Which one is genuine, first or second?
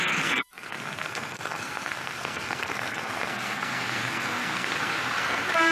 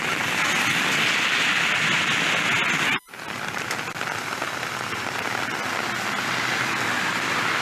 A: second